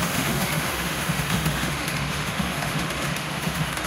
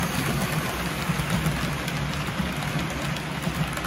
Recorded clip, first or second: second